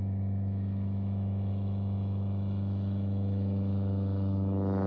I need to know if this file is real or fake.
fake